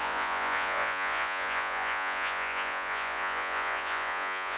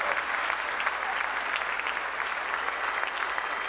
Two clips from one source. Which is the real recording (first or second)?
second